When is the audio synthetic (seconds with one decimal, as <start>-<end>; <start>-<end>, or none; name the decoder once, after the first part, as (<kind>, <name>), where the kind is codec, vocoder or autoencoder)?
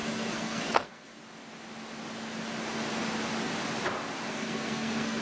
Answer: 0.0-1.2 (codec, SNAC); 4.3-5.2